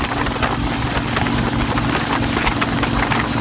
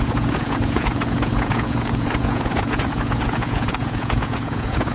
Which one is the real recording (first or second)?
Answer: first